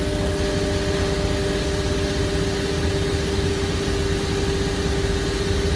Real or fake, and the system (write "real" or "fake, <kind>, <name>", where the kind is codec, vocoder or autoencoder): real